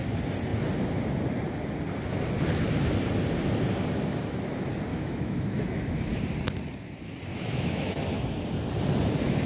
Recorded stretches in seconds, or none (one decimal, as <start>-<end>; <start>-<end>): 0.0-4.9; 6.0-7.3; 8.0-9.5